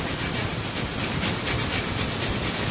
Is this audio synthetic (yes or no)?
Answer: no